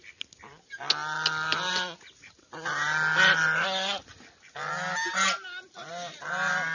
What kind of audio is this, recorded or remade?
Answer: recorded